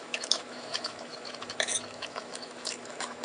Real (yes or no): no